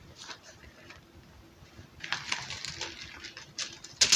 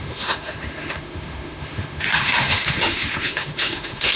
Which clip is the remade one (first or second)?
second